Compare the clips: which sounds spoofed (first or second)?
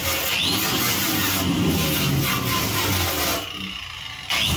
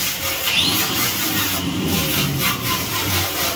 second